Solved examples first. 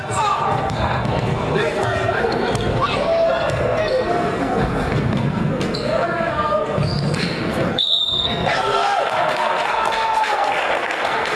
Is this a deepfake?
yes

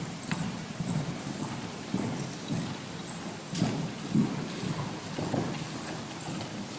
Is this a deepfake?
no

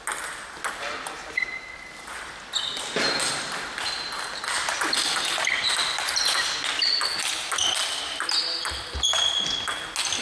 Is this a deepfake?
no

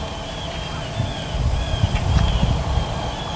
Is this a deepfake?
no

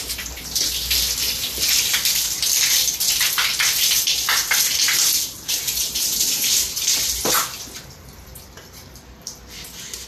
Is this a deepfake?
no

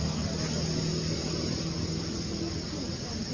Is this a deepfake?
no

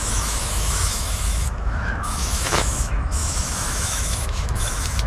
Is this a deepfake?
yes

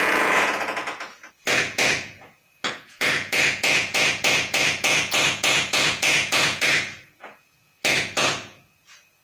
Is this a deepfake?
yes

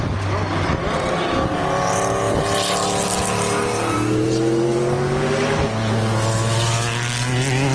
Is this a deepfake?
no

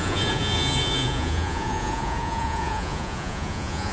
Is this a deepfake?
yes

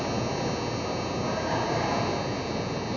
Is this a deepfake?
no